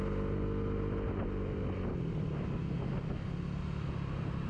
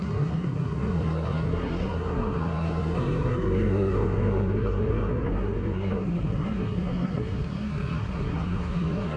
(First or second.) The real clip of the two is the first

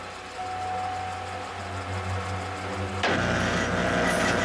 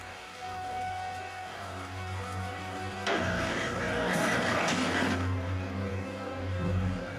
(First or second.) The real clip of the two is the first